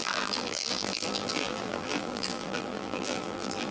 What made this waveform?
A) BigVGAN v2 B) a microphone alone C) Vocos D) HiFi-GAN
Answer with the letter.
A